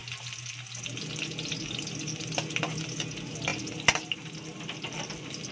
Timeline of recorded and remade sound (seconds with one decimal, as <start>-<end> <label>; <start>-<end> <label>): 0.0-5.5 recorded